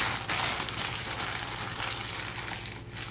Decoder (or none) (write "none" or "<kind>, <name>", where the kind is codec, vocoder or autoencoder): none